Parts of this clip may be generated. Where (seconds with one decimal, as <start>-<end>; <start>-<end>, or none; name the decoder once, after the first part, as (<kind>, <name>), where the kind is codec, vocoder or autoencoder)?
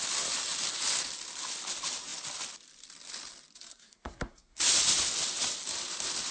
3.7-4.6 (codec, SNAC)